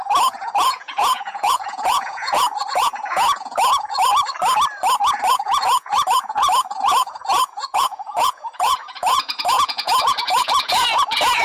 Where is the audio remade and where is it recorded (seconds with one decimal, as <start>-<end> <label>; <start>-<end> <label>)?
0.0-4.2 remade; 4.2-5.3 recorded; 5.3-11.4 remade